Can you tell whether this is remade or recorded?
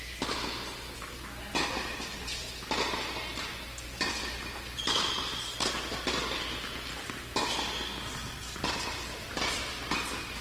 recorded